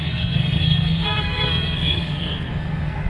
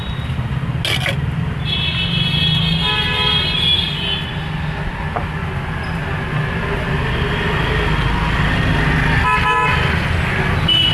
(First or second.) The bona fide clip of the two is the second